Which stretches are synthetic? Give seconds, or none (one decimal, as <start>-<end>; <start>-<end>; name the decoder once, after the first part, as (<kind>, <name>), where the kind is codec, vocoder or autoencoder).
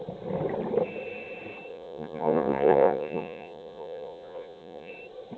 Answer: 1.7-4.9 (vocoder, Vocos)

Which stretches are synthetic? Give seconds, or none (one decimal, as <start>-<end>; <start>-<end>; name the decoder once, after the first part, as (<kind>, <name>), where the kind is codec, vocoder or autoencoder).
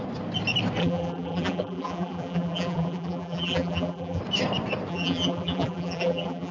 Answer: 0.8-4.2 (vocoder, BigVGAN v2); 4.9-6.5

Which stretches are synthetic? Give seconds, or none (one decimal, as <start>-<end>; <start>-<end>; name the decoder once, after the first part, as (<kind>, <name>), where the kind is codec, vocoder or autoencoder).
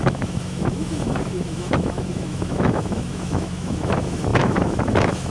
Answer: 0.0-5.3 (autoencoder, DAC-VAE)